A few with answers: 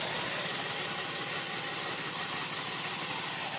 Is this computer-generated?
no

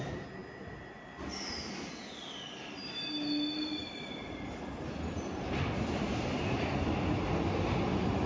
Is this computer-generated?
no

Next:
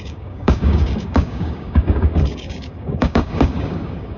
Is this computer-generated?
yes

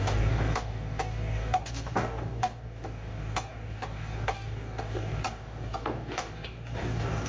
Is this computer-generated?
yes